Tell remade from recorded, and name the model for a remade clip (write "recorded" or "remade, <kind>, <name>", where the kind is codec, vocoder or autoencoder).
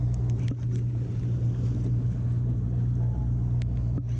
recorded